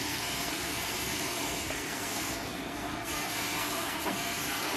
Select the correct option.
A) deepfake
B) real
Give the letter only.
A